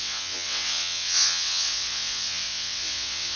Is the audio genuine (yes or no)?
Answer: no